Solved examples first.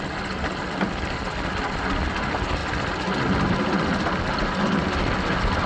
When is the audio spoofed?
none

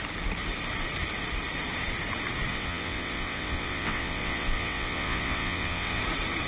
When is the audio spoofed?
2.5-6.0 (vocoder, WaveNeXt)

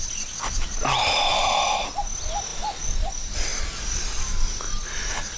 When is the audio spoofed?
none

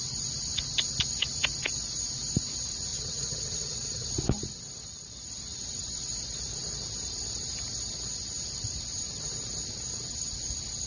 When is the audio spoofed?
2.9-4.1 (vocoder, WaveNeXt)

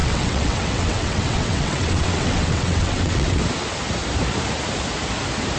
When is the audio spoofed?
0.0-3.4 (vocoder, WaveNeXt)

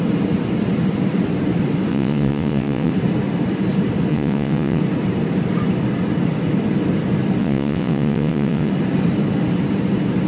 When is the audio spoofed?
1.9-2.9 (vocoder, WaveNeXt); 4.1-4.8; 7.4-8.7